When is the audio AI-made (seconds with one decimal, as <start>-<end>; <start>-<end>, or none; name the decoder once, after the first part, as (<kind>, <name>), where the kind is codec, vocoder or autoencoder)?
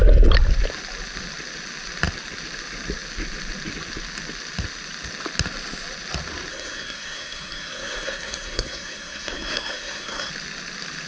6.5-10.3 (codec, SNAC)